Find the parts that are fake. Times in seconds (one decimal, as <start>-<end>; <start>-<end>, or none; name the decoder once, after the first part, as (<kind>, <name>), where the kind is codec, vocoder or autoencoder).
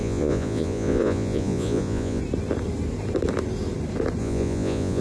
0.0-2.2 (vocoder, Vocos); 4.2-5.0